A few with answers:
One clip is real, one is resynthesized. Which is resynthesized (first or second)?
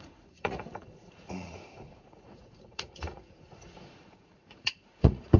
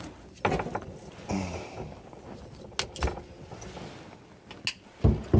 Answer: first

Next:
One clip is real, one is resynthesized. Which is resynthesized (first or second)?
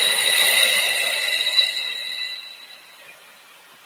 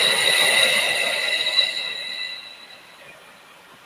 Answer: first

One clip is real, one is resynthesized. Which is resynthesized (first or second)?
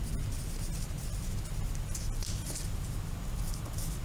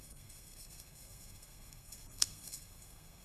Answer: second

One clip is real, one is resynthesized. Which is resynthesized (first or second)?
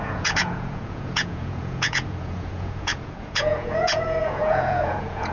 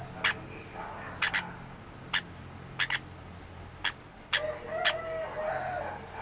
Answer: first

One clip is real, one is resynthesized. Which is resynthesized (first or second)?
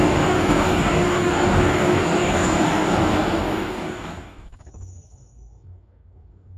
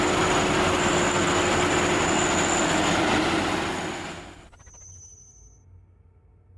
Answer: first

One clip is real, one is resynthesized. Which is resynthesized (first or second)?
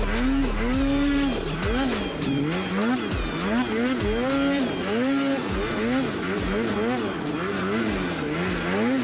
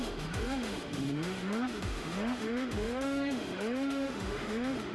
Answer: second